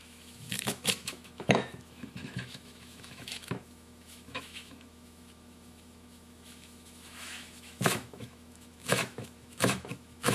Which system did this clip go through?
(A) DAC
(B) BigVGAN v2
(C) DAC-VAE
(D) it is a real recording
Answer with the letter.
C